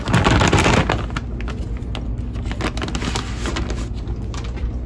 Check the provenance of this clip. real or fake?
real